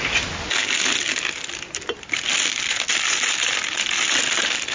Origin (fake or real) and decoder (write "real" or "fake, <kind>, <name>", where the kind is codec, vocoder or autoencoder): real